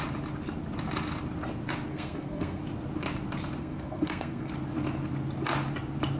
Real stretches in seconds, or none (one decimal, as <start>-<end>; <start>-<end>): 0.0-1.9; 2.6-3.6; 4.5-6.2